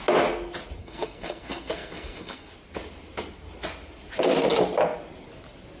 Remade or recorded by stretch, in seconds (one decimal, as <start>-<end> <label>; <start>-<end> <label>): 0.0-0.8 recorded; 0.8-2.5 remade; 2.5-5.8 recorded